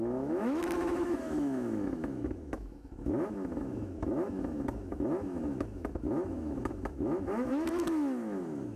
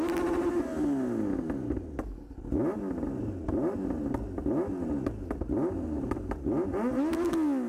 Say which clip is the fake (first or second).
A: first